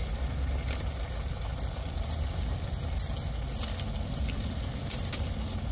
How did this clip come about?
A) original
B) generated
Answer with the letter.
A